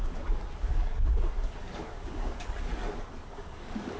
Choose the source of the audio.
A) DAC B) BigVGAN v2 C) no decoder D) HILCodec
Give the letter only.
A